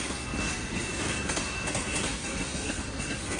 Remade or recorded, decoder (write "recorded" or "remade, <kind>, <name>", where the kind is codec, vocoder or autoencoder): remade, codec, SNAC